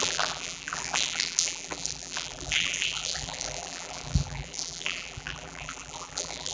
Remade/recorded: remade